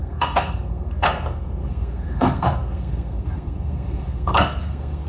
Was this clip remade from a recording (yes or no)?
yes